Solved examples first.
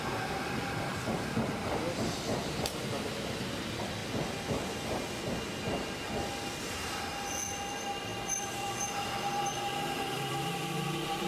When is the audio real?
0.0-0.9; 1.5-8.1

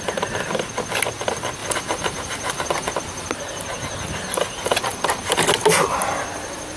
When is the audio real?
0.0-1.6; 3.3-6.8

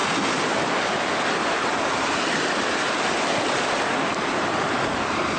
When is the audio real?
0.0-1.4; 4.6-5.4